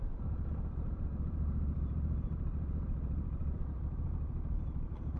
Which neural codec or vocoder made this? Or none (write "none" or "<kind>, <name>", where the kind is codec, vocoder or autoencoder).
vocoder, BigVGAN v2